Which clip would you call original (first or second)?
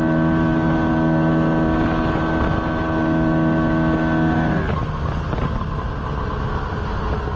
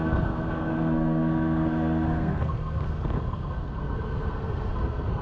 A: first